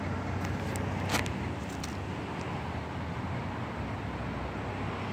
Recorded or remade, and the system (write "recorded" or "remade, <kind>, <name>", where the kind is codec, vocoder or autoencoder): recorded